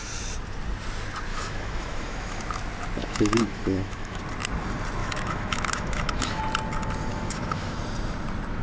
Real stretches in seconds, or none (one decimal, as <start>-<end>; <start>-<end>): 0.0-1.3; 2.4-3.0; 4.2-5.0; 6.4-7.1; 7.8-8.6